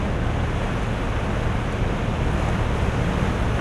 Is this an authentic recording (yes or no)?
yes